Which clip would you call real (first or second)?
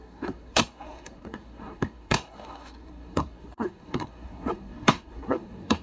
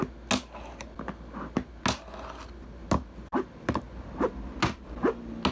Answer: second